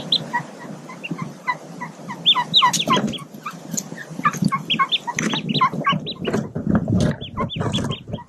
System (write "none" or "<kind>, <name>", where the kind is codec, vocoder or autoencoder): none